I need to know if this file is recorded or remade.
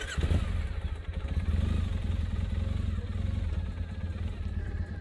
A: recorded